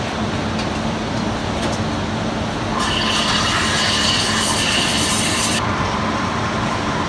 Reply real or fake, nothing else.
fake